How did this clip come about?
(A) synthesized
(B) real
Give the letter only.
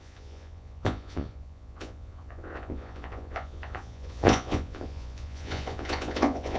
A